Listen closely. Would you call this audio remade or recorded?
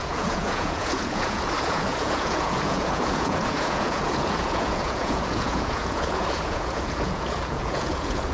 remade